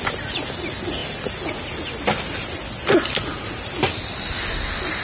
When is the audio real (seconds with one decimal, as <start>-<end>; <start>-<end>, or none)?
0.0-5.0